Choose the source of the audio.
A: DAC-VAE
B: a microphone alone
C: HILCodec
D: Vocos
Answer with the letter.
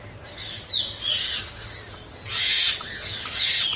B